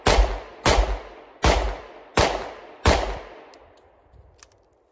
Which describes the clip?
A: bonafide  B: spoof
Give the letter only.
A